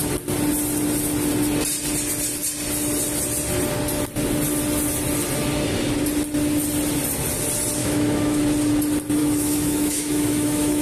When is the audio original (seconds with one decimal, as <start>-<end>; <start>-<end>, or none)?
0.0-7.8; 8.4-9.2